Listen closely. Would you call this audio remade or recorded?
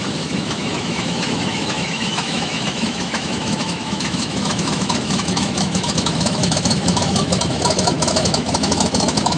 remade